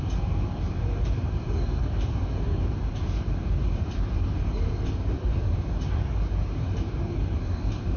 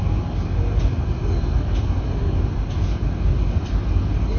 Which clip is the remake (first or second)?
first